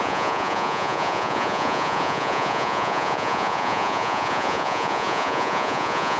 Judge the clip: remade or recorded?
remade